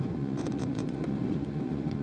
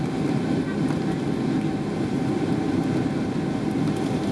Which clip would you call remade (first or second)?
first